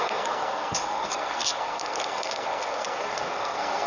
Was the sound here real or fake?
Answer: fake